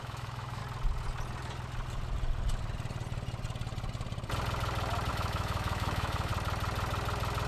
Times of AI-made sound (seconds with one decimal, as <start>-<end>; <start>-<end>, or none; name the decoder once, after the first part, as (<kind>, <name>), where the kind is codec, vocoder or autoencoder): 0.0-0.6 (autoencoder, DAC-VAE); 5.1-6.3